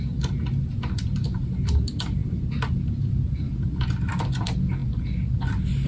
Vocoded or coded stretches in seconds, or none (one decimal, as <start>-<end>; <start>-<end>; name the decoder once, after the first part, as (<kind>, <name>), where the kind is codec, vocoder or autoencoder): none